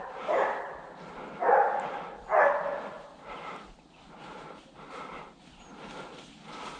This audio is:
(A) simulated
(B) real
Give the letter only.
B